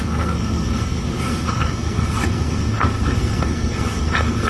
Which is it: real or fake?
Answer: fake